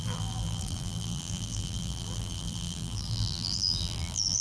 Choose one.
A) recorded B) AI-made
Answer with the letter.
B